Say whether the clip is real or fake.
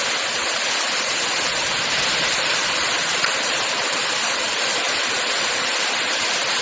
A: real